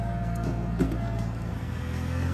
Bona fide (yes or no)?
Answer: no